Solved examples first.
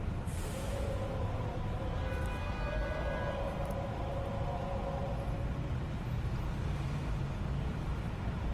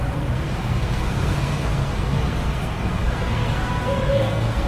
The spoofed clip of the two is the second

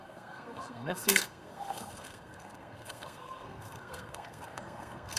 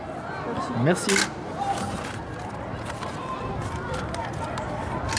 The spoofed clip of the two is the first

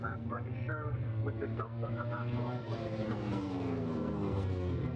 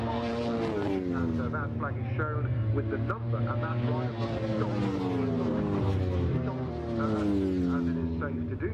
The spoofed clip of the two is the first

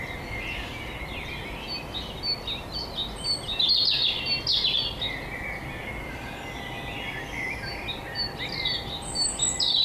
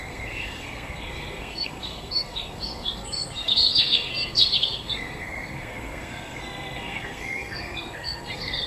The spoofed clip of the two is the second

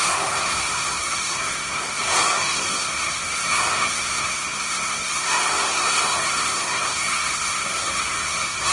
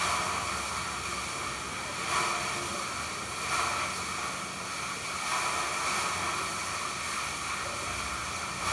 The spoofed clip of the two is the first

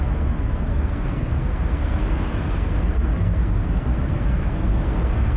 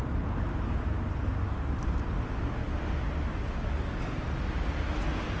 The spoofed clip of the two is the first